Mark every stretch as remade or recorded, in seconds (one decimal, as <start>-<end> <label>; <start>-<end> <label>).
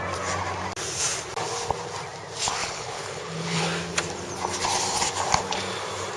0.0-2.6 recorded; 2.6-3.6 remade; 3.6-6.2 recorded